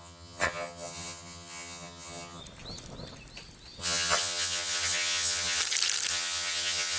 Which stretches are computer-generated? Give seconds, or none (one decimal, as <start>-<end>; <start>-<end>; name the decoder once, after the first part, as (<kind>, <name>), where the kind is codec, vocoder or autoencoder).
0.0-2.4 (vocoder, HiFi-GAN); 3.8-5.6; 6.1-7.0